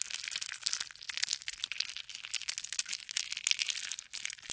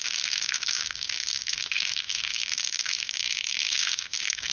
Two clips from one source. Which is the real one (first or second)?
first